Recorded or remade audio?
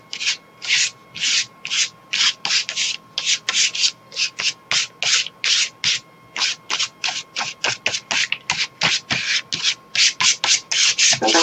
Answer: recorded